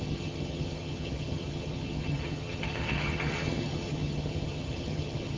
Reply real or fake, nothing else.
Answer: fake